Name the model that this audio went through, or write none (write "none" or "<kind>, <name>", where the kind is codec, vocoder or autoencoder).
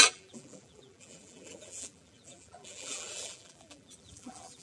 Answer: vocoder, BigVGAN v2